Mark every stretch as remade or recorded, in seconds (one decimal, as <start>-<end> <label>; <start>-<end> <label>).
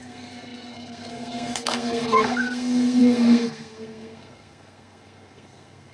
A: 0.0-5.9 remade